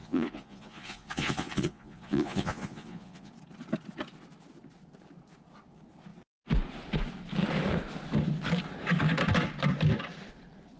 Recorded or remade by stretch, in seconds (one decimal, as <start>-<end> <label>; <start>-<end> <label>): 0.0-3.3 remade; 3.3-10.8 recorded